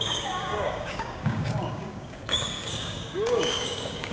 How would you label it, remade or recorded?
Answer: remade